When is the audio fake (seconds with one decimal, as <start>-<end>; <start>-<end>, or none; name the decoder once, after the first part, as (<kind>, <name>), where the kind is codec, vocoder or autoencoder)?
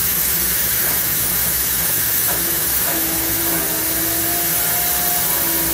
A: 0.0-3.4 (autoencoder, DAC-VAE)